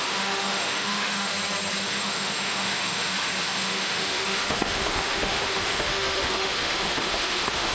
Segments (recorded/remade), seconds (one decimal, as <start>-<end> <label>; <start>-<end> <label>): 0.0-1.3 remade; 1.3-1.8 recorded; 1.8-7.7 remade